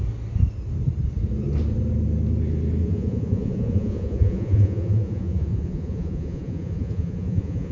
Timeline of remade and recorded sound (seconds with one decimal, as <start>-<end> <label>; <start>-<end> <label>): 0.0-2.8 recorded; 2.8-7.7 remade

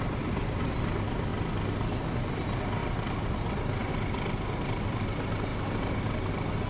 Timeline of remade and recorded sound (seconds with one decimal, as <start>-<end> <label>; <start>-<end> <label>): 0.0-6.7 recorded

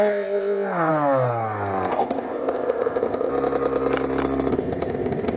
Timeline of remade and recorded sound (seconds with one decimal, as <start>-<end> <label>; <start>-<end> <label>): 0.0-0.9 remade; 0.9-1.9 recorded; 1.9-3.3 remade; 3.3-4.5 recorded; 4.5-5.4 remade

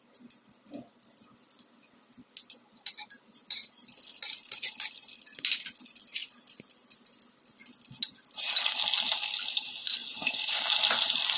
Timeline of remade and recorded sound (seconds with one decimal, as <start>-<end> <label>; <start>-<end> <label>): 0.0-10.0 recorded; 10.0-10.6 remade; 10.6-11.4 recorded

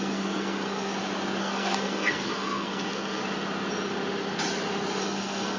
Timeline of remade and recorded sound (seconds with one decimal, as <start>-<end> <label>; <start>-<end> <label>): 0.0-0.9 remade; 0.9-1.4 recorded; 1.4-3.2 remade; 3.2-5.0 recorded; 5.0-5.6 remade

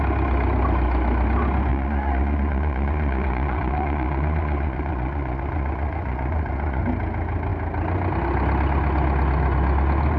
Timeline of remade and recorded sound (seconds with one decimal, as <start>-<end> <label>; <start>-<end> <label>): 0.0-1.7 recorded; 1.7-6.8 remade; 6.8-10.2 recorded

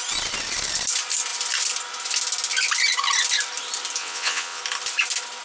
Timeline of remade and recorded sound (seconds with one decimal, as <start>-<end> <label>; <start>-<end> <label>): 0.0-4.0 recorded; 4.0-4.6 remade; 4.6-5.4 recorded